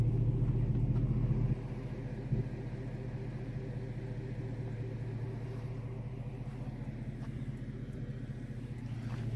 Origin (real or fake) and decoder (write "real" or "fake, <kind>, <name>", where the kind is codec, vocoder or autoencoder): real